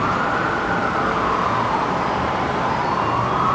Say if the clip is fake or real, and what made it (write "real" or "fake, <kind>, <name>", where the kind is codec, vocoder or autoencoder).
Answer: real